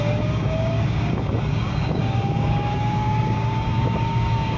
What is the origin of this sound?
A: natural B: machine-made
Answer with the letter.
B